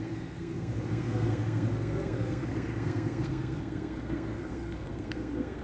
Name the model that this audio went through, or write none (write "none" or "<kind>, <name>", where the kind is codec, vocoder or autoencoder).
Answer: codec, SNAC